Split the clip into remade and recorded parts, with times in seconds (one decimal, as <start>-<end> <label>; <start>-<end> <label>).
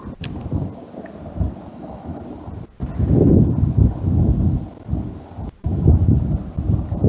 0.0-1.7 recorded; 1.7-2.2 remade; 2.2-7.1 recorded